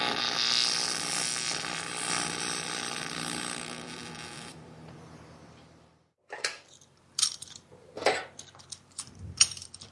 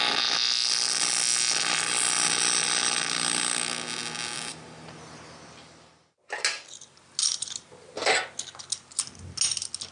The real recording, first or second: second